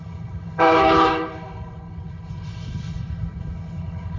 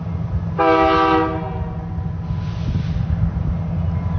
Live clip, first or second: second